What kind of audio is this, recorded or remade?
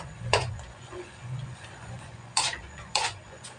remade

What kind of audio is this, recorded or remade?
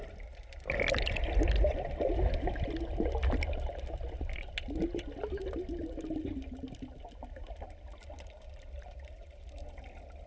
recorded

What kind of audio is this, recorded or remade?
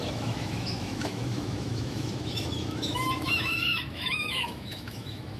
remade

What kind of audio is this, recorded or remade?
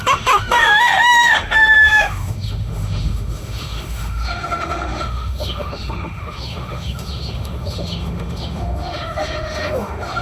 remade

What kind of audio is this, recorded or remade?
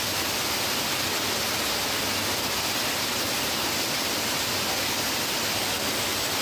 recorded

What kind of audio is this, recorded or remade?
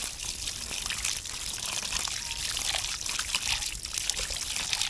recorded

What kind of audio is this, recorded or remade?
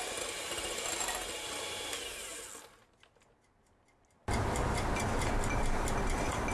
recorded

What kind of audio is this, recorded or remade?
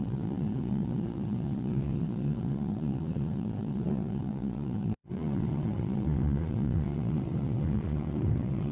remade